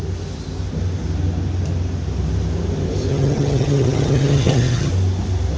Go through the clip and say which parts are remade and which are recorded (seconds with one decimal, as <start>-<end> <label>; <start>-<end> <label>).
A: 0.0-3.1 recorded; 3.1-4.9 remade; 4.9-5.6 recorded